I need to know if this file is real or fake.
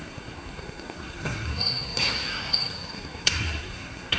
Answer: fake